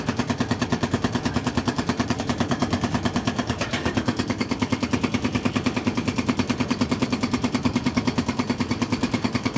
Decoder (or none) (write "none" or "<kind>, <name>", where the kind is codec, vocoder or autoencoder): codec, DAC